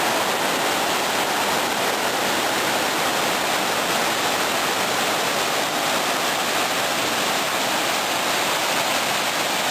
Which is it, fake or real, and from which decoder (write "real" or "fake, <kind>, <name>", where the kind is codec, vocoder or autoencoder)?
real